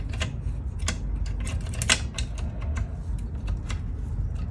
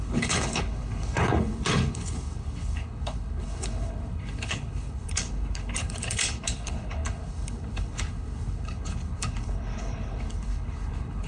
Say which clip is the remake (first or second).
second